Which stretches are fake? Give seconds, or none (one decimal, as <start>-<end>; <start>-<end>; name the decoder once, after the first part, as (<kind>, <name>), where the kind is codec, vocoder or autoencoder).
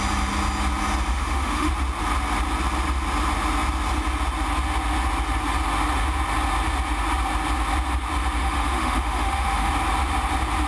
1.1-1.7 (autoencoder, DAC-VAE); 8.4-9.7